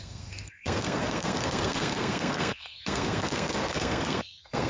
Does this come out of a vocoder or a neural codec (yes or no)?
yes